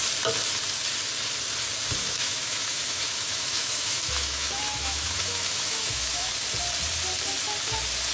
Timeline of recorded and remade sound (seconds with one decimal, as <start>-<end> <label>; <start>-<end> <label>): 0.0-2.0 recorded; 2.0-6.3 remade; 6.3-8.1 recorded